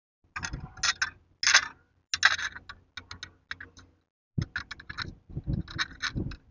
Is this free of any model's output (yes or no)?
yes